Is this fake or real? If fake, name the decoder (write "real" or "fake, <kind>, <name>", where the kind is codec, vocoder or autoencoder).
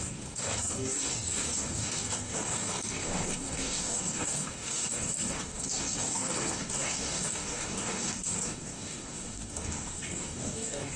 fake, codec, DAC